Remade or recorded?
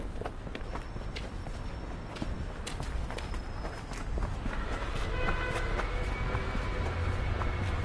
recorded